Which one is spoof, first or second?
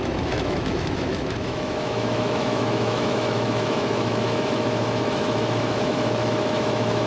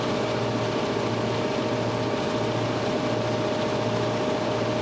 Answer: first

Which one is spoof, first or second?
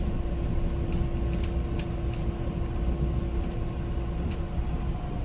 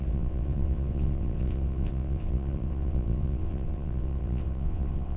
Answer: second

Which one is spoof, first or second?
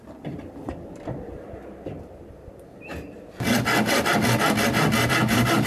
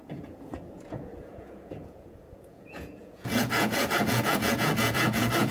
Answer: second